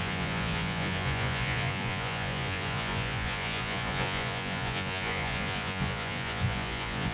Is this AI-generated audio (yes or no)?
yes